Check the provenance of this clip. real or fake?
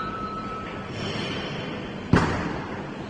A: fake